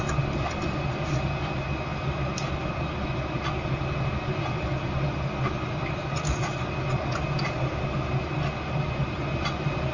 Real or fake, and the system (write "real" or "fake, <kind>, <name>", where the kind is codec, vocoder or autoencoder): real